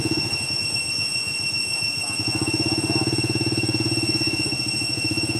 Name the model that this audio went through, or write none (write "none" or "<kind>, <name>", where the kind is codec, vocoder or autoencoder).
vocoder, Vocos